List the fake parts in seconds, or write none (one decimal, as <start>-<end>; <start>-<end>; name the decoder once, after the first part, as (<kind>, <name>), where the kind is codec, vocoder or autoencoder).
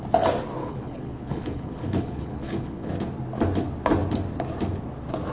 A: 0.6-2.9 (codec, HILCodec)